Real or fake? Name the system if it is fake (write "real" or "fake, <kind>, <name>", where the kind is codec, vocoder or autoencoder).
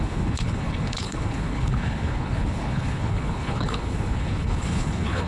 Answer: fake, codec, HILCodec